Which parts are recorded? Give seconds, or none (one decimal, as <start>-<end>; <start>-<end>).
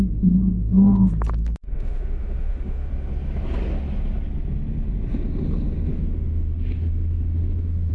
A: 0.0-0.4; 1.1-1.7; 2.9-5.9